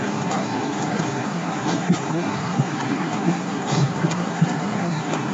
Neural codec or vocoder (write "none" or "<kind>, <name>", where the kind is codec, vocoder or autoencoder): codec, SNAC